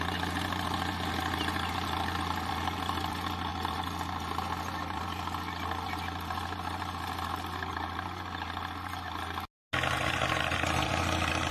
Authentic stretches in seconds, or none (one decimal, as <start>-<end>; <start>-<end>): 0.0-11.5